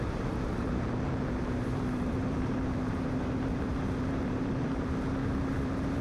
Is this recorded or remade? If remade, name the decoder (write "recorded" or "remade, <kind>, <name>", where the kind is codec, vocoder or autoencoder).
remade, vocoder, BigVGAN v2